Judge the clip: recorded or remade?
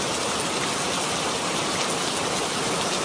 recorded